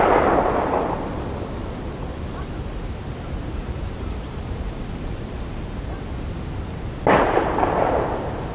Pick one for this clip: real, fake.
real